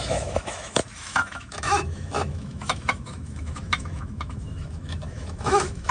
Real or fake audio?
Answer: fake